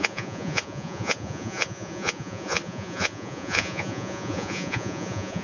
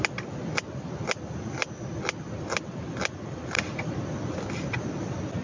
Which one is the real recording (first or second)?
second